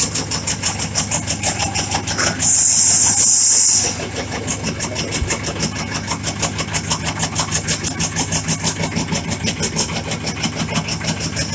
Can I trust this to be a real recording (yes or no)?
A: yes